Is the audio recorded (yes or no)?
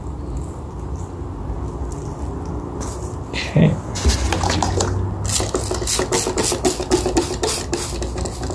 yes